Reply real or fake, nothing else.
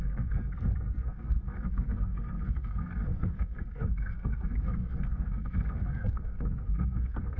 fake